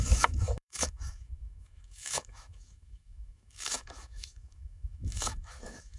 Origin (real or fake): fake